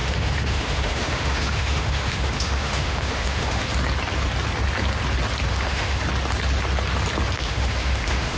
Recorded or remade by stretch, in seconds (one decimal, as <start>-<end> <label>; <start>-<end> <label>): 0.0-3.7 remade; 3.7-5.5 recorded; 5.5-6.0 remade; 6.0-7.4 recorded; 7.4-8.4 remade